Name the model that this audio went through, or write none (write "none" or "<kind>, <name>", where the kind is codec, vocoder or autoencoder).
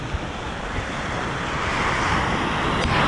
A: none